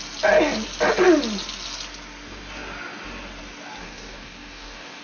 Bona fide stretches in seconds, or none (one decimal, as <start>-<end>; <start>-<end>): 0.0-3.8